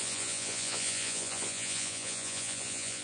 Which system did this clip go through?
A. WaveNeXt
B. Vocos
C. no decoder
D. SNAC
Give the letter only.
B